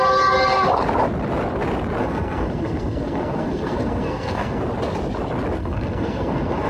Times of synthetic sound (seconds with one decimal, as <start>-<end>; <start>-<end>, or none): 2.0-4.6; 5.6-6.7